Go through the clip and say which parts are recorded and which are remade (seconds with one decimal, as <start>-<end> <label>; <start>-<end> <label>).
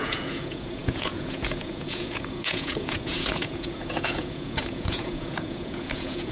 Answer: 0.0-6.3 remade